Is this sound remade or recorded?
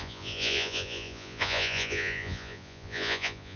remade